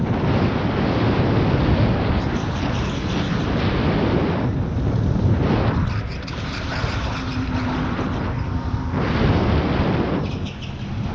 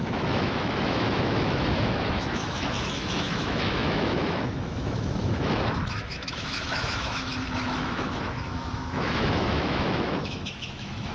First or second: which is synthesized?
second